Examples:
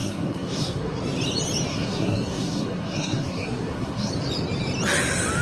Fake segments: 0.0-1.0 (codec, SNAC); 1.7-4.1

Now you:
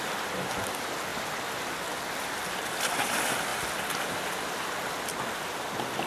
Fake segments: none

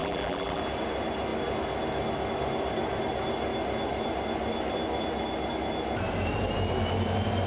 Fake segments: 0.0-0.6 (vocoder, BigVGAN v2)